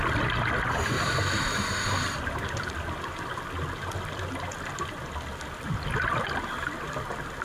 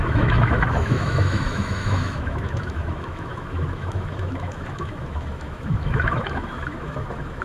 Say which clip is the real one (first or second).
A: first